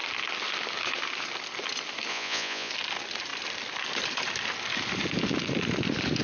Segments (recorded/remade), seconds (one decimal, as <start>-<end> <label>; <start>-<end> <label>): 0.0-2.1 recorded; 2.1-2.7 remade; 2.7-6.2 recorded